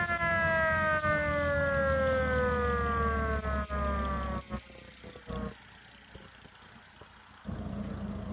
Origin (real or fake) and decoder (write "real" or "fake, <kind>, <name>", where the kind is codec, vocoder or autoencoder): real